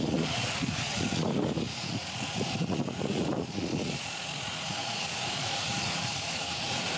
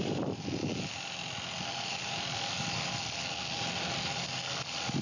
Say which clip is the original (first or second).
second